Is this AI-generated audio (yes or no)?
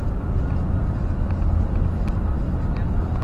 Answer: no